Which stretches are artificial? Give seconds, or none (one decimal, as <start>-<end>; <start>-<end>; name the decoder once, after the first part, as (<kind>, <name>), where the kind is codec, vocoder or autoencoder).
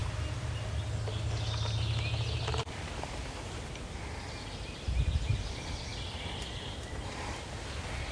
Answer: none